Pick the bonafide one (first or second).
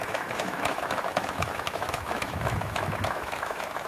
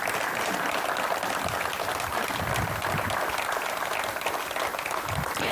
second